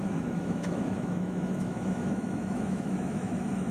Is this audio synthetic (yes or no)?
yes